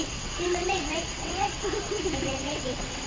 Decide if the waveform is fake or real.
fake